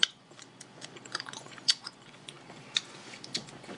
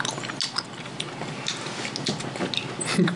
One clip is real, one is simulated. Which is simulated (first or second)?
first